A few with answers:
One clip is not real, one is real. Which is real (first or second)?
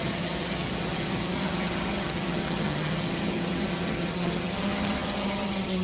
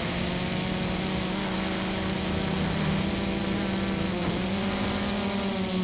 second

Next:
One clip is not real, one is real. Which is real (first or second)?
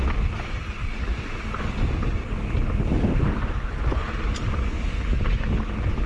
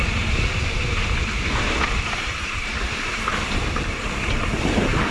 first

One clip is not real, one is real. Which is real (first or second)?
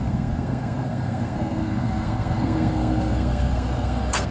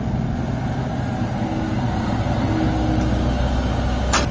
second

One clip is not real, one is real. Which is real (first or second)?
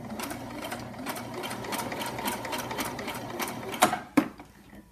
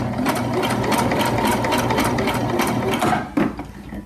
second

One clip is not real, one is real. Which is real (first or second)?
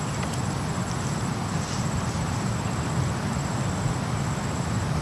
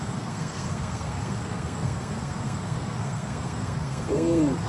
first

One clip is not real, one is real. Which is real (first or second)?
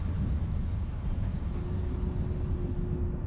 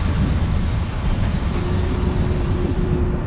first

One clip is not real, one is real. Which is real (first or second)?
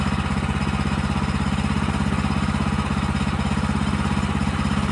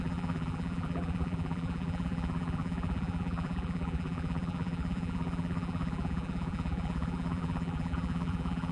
first